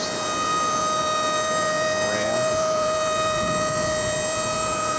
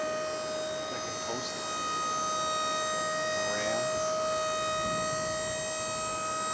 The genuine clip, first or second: second